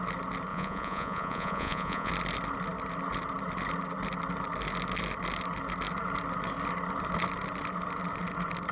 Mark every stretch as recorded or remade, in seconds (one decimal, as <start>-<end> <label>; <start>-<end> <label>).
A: 0.0-0.5 recorded; 0.5-2.1 remade; 2.1-8.7 recorded